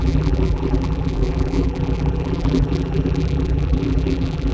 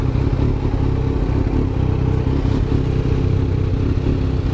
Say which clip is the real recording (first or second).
second